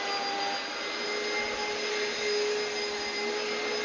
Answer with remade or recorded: recorded